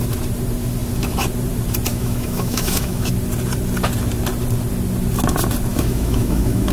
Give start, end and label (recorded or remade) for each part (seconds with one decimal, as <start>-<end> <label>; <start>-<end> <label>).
0.0-1.9 recorded; 1.9-3.1 remade; 3.1-5.7 recorded; 5.7-6.7 remade

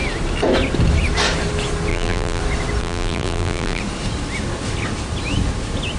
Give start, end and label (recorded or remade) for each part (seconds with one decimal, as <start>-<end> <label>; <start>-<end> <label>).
0.0-1.9 recorded; 1.9-2.4 remade; 2.4-2.8 recorded; 2.8-3.8 remade; 3.8-6.0 recorded